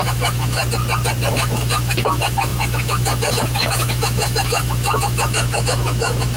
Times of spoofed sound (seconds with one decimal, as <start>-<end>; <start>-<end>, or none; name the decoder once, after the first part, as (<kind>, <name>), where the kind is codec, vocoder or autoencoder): 0.0-0.6 (autoencoder, DAC-VAE); 1.3-6.4